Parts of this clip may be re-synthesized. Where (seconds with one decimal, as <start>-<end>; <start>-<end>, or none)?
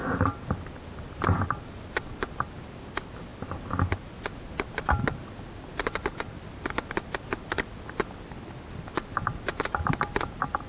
none